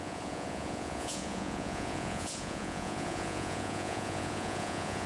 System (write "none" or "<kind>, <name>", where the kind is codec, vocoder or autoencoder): vocoder, Vocos